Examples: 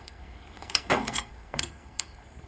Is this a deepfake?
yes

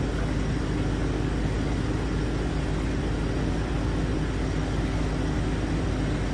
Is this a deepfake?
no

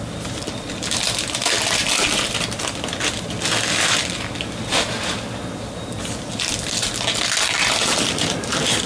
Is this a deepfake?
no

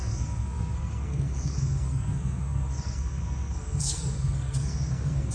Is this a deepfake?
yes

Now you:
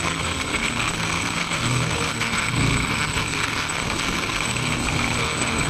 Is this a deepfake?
yes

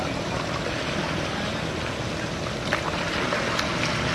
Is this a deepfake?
no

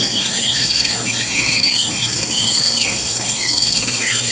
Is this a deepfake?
yes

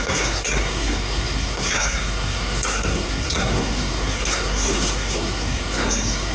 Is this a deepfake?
yes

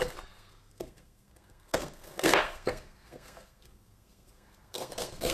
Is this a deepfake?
yes